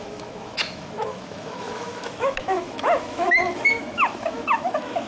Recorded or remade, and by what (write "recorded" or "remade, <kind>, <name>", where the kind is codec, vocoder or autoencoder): remade, autoencoder, DAC-VAE